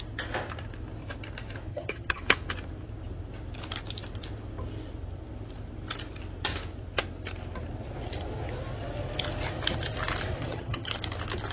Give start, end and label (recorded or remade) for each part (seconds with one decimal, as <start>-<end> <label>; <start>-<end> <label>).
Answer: 0.0-1.7 recorded; 1.7-2.2 remade; 2.2-10.4 recorded; 10.4-10.9 remade; 10.9-11.5 recorded